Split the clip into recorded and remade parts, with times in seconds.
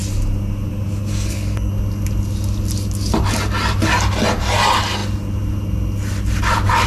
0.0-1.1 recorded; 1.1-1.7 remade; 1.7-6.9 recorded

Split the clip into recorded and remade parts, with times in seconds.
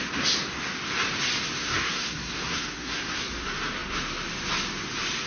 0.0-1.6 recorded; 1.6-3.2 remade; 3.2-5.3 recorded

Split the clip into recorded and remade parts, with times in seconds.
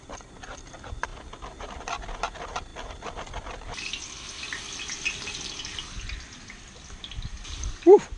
0.0-8.2 recorded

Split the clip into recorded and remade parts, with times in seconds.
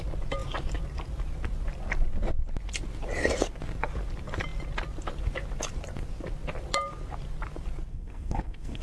0.0-7.9 recorded; 7.9-8.8 remade